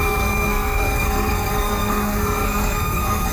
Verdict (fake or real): fake